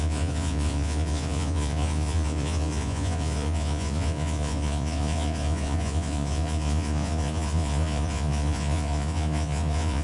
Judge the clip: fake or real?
fake